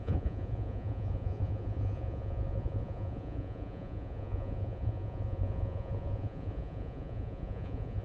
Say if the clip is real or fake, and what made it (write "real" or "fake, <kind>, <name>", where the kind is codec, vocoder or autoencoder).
fake, vocoder, Vocos